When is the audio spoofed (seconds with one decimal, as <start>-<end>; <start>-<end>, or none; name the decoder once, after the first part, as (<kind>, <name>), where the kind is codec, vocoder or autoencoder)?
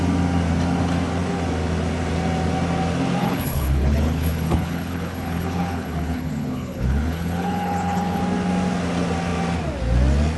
3.2-8.2 (codec, HILCodec)